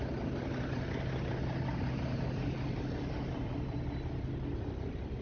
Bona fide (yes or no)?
yes